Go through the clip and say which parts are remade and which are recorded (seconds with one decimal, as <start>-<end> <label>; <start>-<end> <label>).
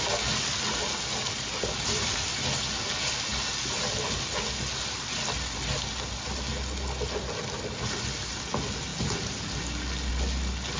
0.0-10.8 recorded